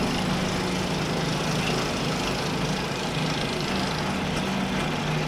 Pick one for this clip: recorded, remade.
recorded